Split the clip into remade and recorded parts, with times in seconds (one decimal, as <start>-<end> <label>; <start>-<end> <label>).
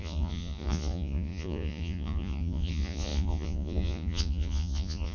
0.0-5.1 remade